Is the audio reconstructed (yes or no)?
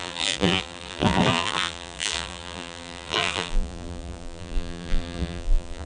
yes